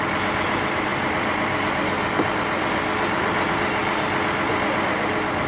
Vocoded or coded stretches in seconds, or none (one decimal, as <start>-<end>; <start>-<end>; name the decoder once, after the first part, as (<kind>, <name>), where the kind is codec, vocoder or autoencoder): 3.8-4.7 (vocoder, BigVGAN v2)